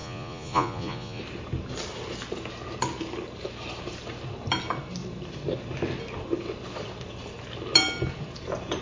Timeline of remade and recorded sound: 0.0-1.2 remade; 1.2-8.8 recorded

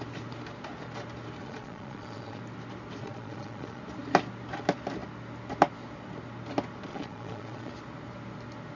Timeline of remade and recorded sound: 0.0-1.4 recorded; 1.4-2.4 remade; 2.4-3.0 recorded; 3.0-3.8 remade; 3.8-6.9 recorded; 6.9-7.7 remade; 7.7-8.8 recorded

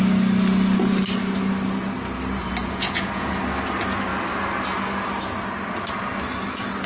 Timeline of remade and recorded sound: 0.0-2.4 recorded; 2.4-3.4 remade; 3.4-6.9 recorded

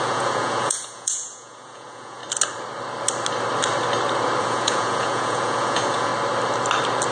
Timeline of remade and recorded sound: 0.0-2.2 remade; 2.2-4.4 recorded; 4.4-6.1 remade; 6.1-7.1 recorded

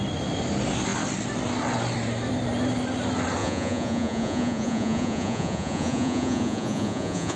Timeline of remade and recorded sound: 0.0-3.4 recorded; 3.4-7.4 remade

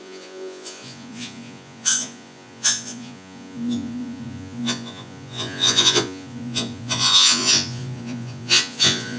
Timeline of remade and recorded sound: 0.0-9.2 remade

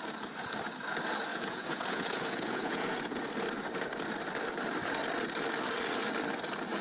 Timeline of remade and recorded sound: 0.0-1.3 recorded; 1.3-3.2 remade; 3.2-6.8 recorded